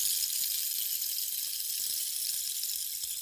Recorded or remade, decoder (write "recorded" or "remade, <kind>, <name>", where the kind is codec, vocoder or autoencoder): recorded